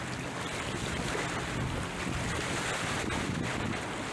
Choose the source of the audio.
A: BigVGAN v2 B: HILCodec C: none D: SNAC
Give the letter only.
C